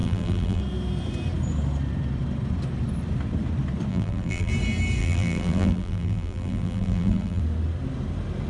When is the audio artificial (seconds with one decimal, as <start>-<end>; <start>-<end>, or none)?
0.0-0.6; 3.9-4.5; 5.0-7.4